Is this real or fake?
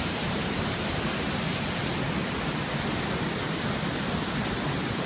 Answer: real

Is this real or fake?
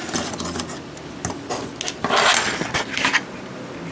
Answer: real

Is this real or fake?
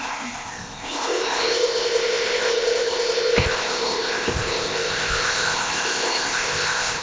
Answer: fake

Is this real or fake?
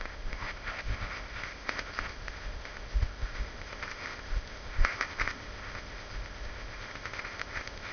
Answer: fake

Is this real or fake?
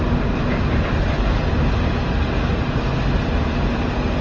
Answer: real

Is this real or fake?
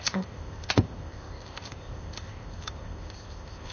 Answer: fake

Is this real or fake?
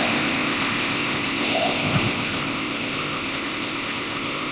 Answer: fake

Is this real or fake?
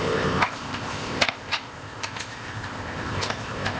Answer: fake